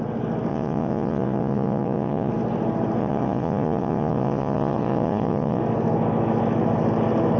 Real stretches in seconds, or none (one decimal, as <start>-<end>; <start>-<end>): 0.0-0.5; 2.3-3.0; 5.6-7.4